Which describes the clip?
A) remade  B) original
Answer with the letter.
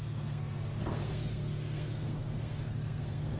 A